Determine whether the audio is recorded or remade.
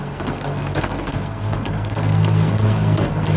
remade